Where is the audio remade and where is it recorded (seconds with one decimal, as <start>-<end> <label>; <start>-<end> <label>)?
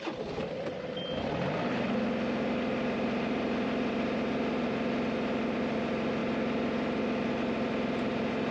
0.0-8.5 recorded